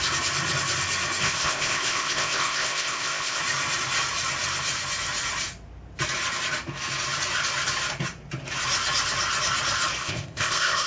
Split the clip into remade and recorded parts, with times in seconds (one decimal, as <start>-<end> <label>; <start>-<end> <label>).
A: 0.0-1.2 recorded; 1.2-3.4 remade; 3.4-10.0 recorded; 10.0-10.9 remade